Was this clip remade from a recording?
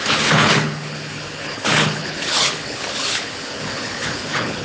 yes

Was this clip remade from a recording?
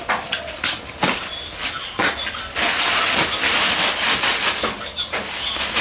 no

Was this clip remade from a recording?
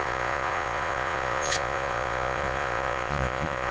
yes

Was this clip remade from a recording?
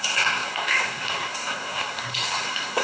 yes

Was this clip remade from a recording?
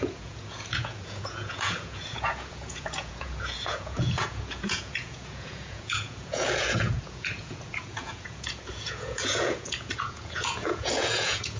yes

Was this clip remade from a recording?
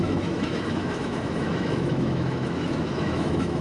yes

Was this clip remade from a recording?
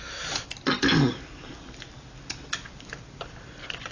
no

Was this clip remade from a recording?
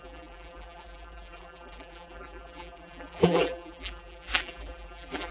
yes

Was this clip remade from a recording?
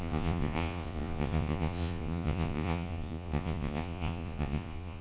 yes